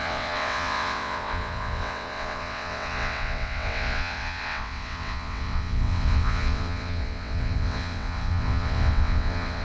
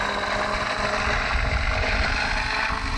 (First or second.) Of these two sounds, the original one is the second